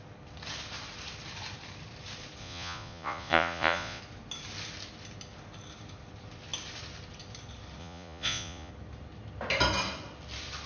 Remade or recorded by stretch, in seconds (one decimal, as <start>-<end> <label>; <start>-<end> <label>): 0.0-2.4 recorded; 2.4-4.0 remade; 4.0-7.8 recorded; 7.8-8.7 remade; 8.7-10.7 recorded